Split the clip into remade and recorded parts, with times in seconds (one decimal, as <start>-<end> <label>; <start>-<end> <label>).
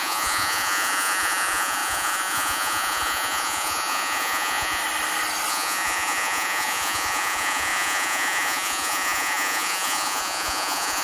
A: 0.0-4.8 remade; 4.8-5.5 recorded; 5.5-11.0 remade